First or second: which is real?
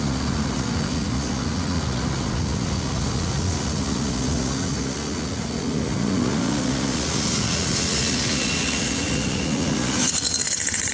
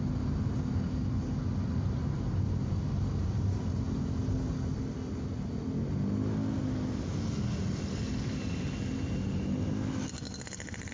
second